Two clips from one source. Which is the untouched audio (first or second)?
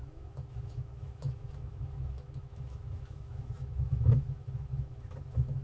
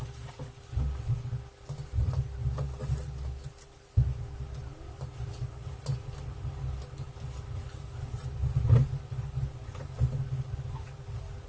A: second